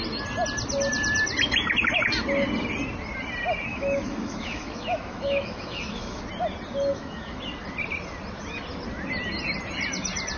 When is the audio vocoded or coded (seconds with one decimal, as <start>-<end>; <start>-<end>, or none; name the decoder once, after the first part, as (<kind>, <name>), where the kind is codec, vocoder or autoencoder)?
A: 3.7-6.2 (autoencoder, DAC-VAE); 6.9-7.4